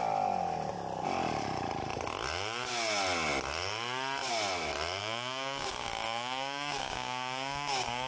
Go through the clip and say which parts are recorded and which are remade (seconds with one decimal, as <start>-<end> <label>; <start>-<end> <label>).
0.0-5.0 recorded; 5.0-8.1 remade